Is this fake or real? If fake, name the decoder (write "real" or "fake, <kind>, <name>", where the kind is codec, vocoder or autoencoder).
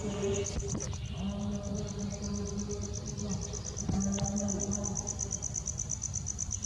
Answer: real